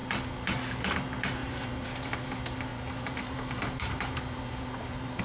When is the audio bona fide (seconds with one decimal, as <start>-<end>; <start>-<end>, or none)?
0.0-1.4; 2.1-2.7